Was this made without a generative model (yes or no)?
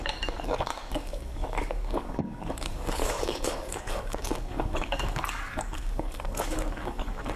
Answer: no